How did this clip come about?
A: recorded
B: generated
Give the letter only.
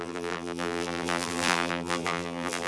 B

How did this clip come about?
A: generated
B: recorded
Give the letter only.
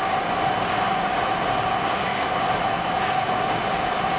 B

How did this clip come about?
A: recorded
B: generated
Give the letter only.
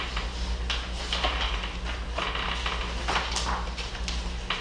A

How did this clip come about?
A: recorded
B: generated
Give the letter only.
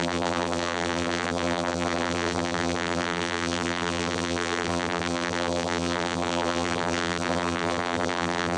B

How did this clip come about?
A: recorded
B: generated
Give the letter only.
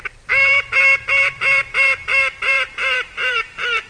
B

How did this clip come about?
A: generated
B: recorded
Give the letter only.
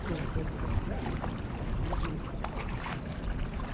B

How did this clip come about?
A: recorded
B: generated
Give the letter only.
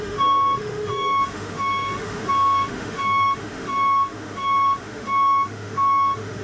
B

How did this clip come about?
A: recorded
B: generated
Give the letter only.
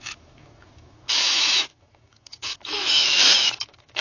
B